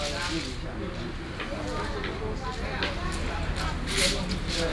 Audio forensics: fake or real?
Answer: real